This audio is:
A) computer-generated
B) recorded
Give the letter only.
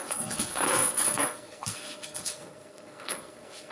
A